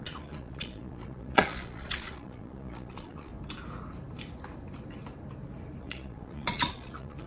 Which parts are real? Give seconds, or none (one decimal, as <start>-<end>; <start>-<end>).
3.3-5.8